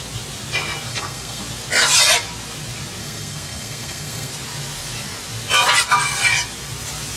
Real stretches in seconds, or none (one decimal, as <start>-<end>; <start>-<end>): 0.0-0.9; 1.4-3.0; 4.3-7.2